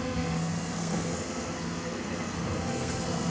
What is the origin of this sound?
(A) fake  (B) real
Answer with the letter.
A